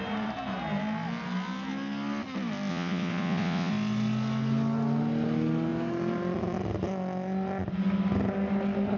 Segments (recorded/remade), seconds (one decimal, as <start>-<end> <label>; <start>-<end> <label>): 0.0-2.7 recorded; 2.7-3.7 remade; 3.7-9.0 recorded